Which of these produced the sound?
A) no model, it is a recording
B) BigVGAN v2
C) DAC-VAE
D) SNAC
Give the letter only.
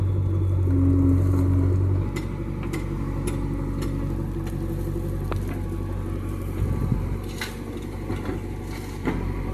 A